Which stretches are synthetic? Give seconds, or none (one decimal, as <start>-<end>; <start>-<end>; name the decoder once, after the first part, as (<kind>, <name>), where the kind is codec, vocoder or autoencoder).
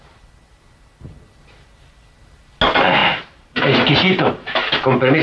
3.0-5.2 (vocoder, BigVGAN v2)